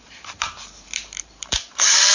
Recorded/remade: remade